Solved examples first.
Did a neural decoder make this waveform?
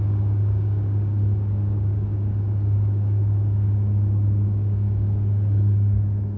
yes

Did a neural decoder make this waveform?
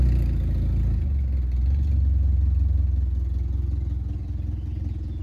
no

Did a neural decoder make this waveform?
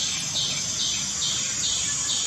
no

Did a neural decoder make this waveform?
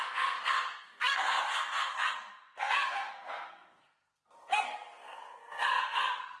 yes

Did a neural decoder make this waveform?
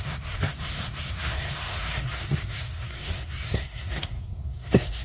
yes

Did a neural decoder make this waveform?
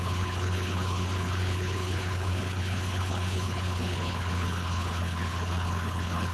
yes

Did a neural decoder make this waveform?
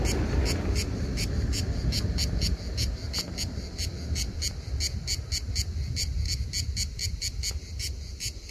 no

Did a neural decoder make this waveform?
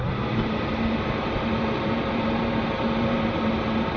no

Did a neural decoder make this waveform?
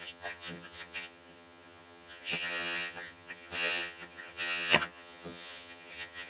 yes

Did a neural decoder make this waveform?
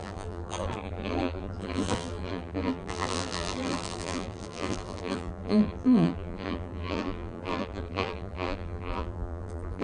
yes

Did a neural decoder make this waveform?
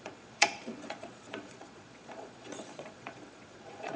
yes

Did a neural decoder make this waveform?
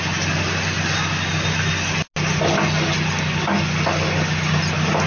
no